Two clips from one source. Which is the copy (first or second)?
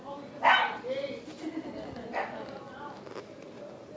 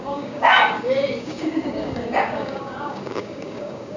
second